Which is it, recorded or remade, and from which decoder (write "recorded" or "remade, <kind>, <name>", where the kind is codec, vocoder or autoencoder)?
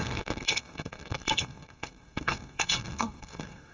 remade, codec, SNAC